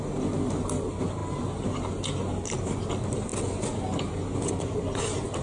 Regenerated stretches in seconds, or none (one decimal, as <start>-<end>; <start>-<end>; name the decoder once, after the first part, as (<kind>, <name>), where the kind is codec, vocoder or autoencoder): none